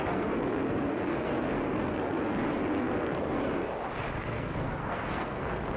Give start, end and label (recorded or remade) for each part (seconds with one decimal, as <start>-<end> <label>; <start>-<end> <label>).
0.0-3.7 remade; 3.7-4.2 recorded; 4.2-5.8 remade